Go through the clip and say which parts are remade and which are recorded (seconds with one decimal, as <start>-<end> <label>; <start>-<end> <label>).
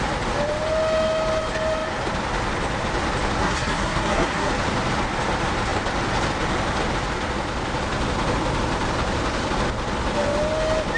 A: 0.0-3.4 recorded; 3.4-4.5 remade; 4.5-11.0 recorded